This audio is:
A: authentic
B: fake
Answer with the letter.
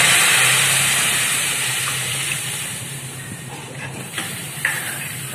B